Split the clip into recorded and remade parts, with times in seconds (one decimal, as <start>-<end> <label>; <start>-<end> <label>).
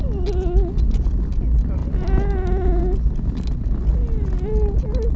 0.0-5.2 recorded